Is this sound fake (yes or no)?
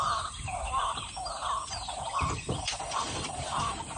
yes